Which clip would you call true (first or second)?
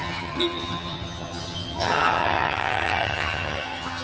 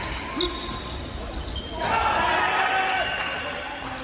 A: second